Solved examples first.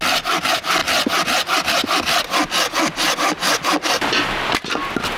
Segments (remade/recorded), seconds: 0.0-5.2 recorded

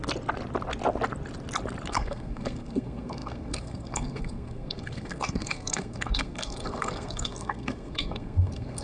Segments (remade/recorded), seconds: 0.0-1.9 recorded; 1.9-8.8 remade

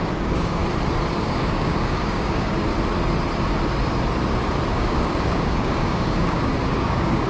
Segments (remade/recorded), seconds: 0.0-0.6 remade; 0.6-1.1 recorded; 1.1-2.7 remade; 2.7-4.7 recorded; 4.7-7.3 remade

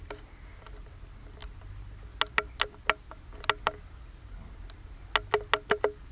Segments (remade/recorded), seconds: 0.0-6.1 recorded